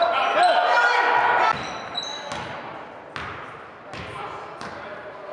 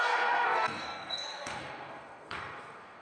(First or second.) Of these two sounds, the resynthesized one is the second